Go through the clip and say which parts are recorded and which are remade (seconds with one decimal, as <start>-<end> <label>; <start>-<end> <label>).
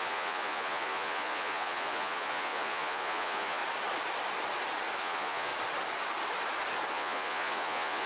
0.0-3.6 remade; 3.6-5.0 recorded; 5.0-5.5 remade; 5.5-6.9 recorded; 6.9-8.1 remade